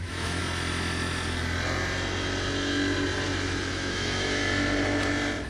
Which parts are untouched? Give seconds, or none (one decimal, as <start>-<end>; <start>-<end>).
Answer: 0.4-3.7; 4.4-5.5

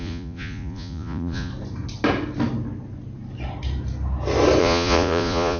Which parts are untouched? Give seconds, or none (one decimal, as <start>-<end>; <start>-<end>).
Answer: 1.5-4.6

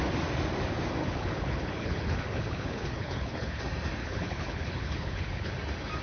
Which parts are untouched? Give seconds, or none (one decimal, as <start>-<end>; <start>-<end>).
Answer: 0.0-1.0; 3.6-4.0; 5.5-6.0

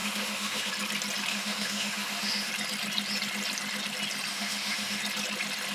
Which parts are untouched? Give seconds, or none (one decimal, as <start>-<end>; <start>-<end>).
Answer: 0.7-1.3; 2.5-4.3; 5.0-5.7

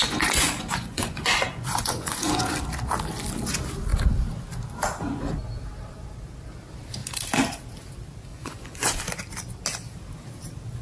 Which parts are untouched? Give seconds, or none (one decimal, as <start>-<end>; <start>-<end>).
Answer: 2.4-8.3; 9.0-10.8